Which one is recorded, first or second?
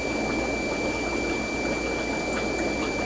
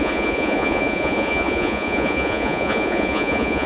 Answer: first